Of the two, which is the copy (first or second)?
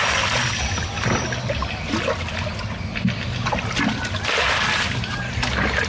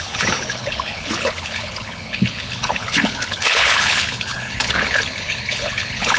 second